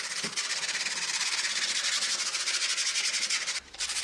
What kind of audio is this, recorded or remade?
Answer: recorded